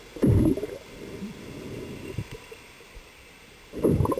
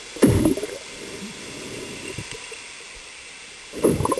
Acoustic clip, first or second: first